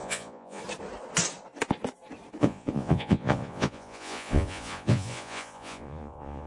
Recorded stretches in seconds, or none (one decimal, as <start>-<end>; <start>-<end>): 0.6-2.4